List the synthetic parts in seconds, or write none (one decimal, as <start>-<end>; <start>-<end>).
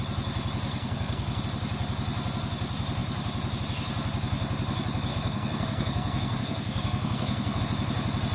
0.7-1.4; 5.1-7.6